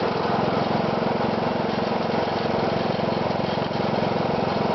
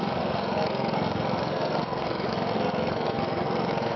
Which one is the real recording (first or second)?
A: first